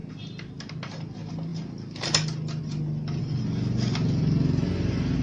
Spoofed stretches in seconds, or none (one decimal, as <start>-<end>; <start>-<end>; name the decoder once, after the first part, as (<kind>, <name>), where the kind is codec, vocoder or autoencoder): none